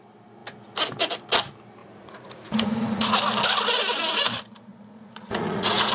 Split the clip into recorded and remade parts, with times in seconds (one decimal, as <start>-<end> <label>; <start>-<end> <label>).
0.0-1.8 recorded; 1.8-3.2 remade; 3.2-4.7 recorded; 4.7-5.9 remade